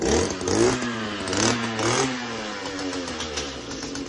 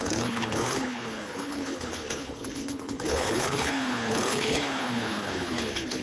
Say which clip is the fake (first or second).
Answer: second